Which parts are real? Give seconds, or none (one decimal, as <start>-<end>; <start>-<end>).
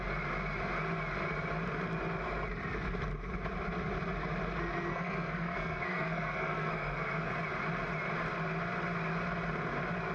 0.0-4.9; 7.3-10.1